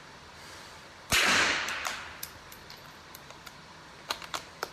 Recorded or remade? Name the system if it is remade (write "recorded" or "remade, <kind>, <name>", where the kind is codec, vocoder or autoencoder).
remade, vocoder, BigVGAN v2